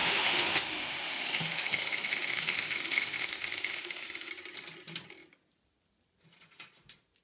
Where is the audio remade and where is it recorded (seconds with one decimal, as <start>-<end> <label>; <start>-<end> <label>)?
0.0-4.3 remade; 4.3-7.2 recorded

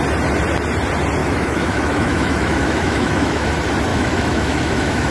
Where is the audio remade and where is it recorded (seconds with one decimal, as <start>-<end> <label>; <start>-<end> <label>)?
0.0-1.2 recorded; 1.2-3.5 remade; 3.5-3.9 recorded; 3.9-5.1 remade